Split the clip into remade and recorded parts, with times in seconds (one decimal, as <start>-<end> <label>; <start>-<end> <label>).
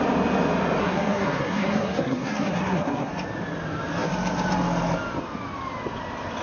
0.0-0.8 recorded; 0.8-3.1 remade; 3.1-6.4 recorded